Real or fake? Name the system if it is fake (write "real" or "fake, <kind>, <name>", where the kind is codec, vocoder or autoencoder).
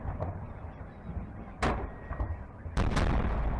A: real